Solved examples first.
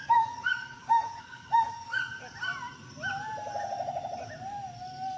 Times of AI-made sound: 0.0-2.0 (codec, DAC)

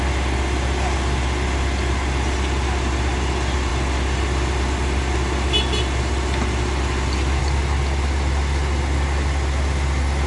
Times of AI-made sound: none

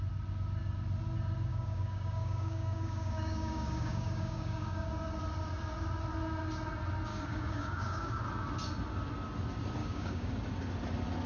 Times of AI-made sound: 1.5-4.9 (codec, DAC); 7.1-8.2; 9.8-10.3

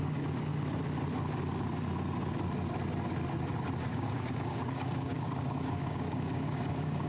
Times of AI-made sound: 0.0-0.5 (codec, DAC); 3.9-7.1